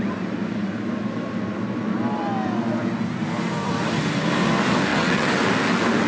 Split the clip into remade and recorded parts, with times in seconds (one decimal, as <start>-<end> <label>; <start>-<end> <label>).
0.0-4.9 recorded; 4.9-5.4 remade; 5.4-6.1 recorded